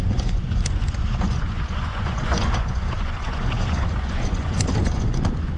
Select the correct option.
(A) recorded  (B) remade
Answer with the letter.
B